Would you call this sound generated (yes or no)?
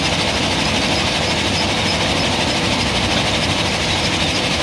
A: no